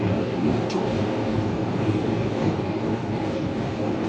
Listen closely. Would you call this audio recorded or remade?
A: remade